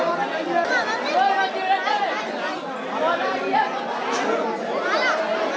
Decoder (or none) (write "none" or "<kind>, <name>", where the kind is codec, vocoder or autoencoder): none